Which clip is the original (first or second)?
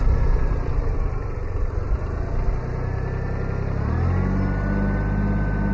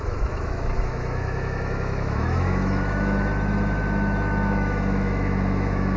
first